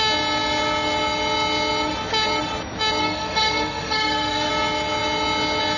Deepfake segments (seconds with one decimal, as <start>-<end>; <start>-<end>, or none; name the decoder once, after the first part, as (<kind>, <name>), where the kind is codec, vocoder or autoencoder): 3.0-4.5 (codec, SNAC)